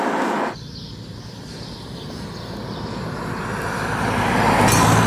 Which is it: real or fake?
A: real